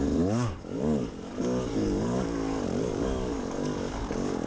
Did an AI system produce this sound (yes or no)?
yes